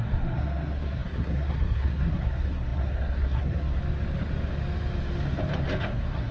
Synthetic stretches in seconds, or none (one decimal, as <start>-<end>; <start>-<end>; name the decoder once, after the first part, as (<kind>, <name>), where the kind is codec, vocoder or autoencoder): 0.0-3.8 (codec, SNAC); 5.8-6.3